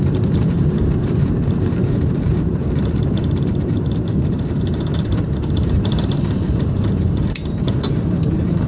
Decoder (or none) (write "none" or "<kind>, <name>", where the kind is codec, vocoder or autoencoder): vocoder, BigVGAN v2